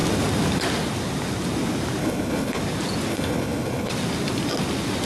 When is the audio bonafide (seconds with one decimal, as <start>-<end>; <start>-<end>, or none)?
0.0-2.0; 2.6-3.1; 3.9-5.1